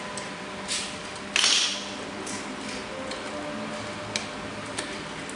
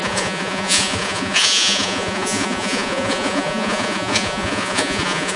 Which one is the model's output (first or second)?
second